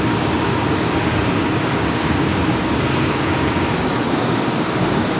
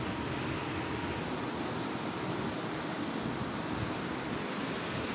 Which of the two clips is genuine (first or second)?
second